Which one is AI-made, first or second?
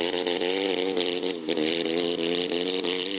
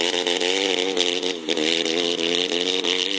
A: first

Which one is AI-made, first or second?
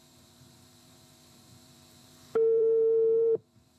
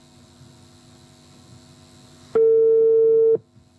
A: first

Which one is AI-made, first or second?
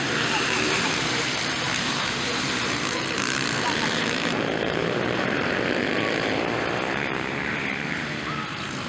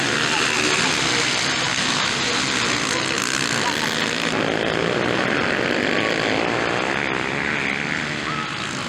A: first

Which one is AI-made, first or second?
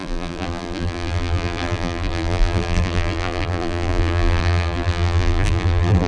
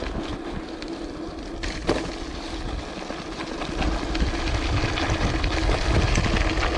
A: first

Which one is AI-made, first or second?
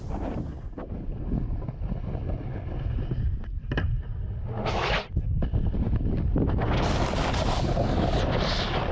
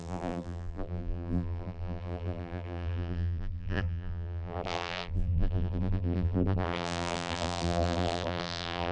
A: second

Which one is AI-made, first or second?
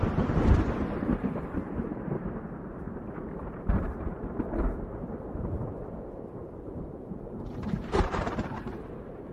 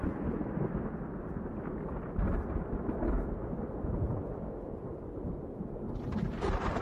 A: first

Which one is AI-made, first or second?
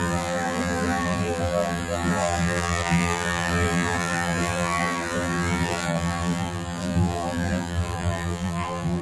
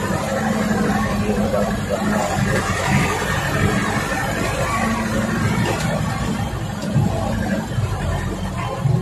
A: first